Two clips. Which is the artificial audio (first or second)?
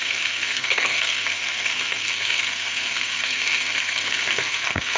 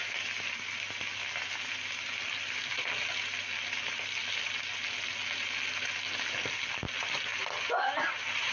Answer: first